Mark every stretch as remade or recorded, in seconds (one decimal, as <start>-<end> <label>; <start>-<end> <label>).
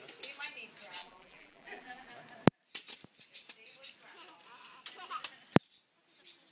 0.0-1.0 recorded; 1.0-2.1 remade; 2.1-6.5 recorded